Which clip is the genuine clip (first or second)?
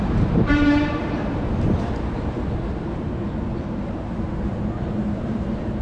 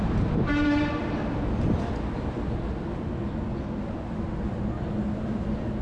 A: second